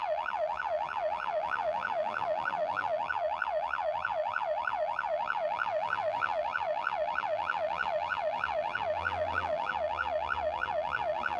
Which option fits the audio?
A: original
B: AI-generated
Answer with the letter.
B